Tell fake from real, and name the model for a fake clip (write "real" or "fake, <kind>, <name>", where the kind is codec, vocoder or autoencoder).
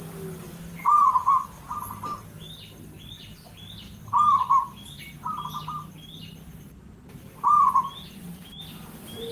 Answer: real